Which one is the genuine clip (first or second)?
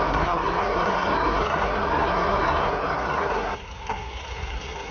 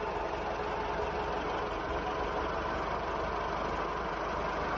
second